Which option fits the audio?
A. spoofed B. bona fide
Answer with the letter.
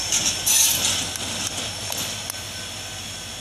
B